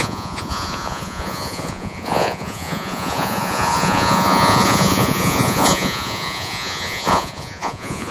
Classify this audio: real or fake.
fake